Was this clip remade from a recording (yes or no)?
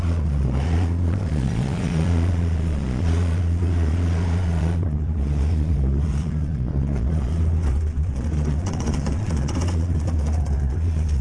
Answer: yes